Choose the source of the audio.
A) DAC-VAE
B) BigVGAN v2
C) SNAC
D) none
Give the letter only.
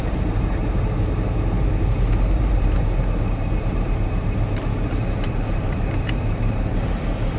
B